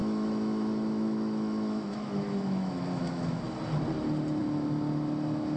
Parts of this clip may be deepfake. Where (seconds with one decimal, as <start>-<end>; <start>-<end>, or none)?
0.0-3.4